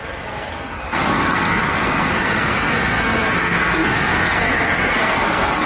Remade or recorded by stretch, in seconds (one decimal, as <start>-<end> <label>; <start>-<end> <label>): 0.0-5.7 remade